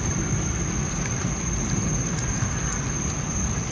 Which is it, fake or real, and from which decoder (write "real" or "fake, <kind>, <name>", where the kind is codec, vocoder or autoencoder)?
real